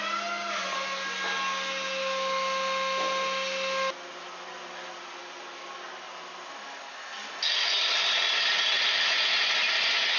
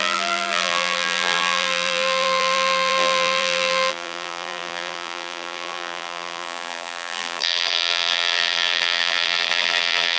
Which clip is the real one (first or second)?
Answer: first